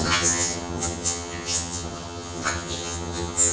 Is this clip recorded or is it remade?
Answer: remade